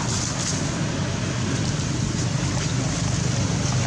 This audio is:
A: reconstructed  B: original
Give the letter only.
B